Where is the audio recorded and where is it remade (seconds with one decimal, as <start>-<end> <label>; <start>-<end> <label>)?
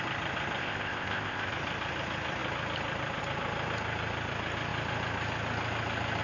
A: 0.0-0.6 recorded; 0.6-1.5 remade; 1.5-6.2 recorded